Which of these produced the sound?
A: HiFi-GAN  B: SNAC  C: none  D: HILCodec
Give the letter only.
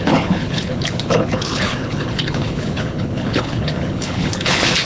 D